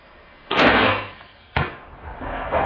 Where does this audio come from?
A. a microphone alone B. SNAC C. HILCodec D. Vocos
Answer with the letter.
B